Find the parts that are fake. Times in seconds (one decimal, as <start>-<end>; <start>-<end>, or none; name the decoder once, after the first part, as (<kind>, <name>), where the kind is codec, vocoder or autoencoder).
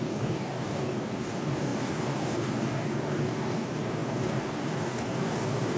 0.0-5.8 (codec, DAC)